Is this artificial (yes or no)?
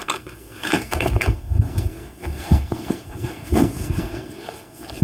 yes